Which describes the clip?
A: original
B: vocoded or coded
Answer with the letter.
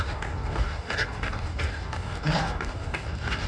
B